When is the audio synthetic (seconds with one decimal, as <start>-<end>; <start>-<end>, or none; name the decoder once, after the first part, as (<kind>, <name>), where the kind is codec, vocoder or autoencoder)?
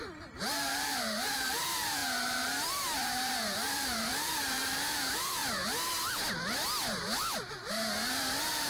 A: 0.0-5.4 (vocoder, BigVGAN v2); 7.7-8.7